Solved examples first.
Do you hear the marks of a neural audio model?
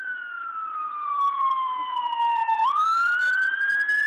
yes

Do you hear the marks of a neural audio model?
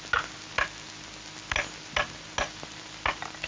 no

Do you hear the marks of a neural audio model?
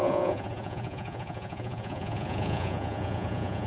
yes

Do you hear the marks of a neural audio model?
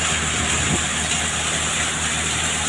no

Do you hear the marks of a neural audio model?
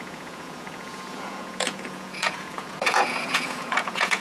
yes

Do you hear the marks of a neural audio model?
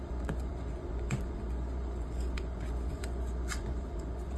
yes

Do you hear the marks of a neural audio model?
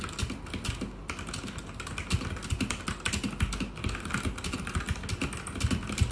no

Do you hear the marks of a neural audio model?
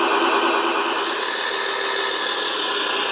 no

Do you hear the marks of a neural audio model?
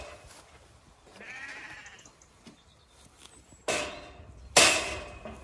no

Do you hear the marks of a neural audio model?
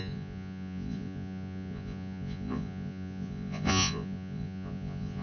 yes